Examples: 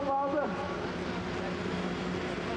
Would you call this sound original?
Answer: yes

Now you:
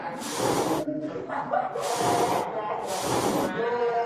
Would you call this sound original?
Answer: yes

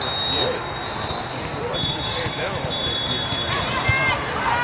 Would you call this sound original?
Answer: yes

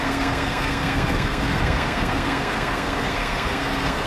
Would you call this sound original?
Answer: no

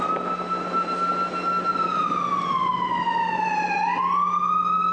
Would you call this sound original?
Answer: yes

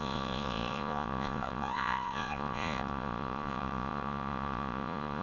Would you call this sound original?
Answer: no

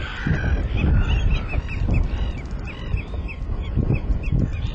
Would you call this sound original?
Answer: yes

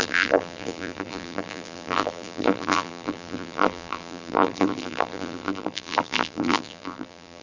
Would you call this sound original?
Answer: no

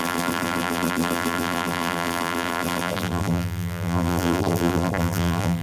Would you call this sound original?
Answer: no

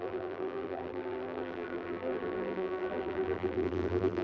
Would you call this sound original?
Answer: no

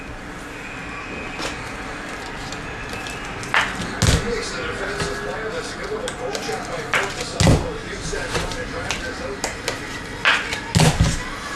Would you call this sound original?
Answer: yes